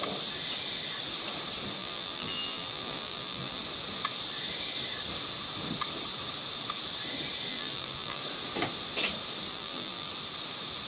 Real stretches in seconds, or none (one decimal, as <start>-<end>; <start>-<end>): 0.0-1.8; 3.6-7.5; 8.2-9.5; 10.1-10.9